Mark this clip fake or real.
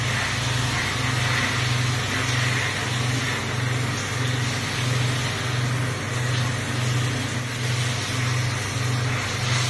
real